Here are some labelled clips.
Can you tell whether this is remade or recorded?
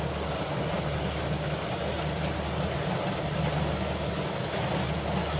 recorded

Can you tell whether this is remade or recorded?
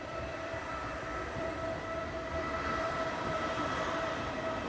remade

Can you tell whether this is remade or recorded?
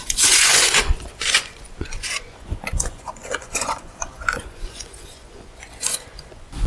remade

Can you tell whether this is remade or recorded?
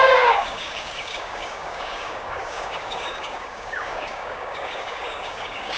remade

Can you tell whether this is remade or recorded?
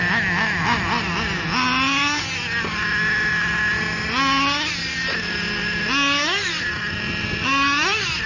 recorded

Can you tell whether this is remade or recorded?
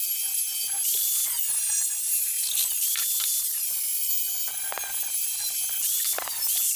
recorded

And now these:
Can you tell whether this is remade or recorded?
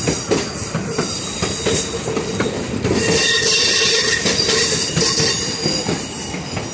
recorded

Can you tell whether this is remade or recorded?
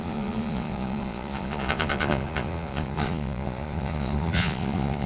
remade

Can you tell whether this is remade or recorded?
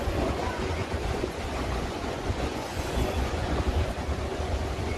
remade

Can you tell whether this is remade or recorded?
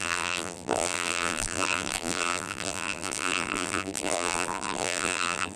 remade